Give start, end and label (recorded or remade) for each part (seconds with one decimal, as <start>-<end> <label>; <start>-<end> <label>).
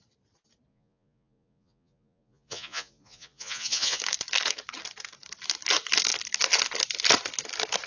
0.0-0.7 recorded; 0.7-4.0 remade; 4.0-7.9 recorded